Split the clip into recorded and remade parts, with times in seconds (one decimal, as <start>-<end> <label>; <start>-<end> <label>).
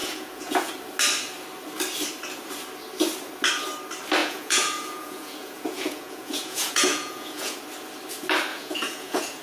0.0-0.7 remade; 0.7-4.2 recorded; 4.2-7.6 remade; 7.6-8.5 recorded; 8.5-9.4 remade